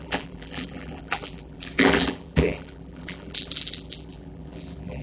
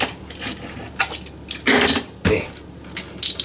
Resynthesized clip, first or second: first